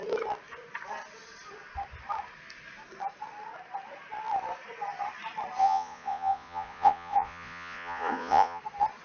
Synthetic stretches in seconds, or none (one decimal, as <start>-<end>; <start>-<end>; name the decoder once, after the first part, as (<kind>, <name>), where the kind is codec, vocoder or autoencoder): 5.6-8.6 (vocoder, Vocos)